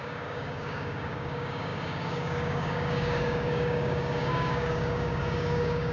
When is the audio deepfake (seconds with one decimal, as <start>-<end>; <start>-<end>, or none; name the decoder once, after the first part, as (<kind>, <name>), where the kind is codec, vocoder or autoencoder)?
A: 0.0-5.9 (codec, DAC)